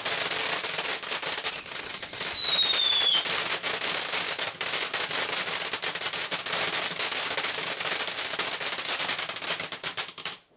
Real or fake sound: real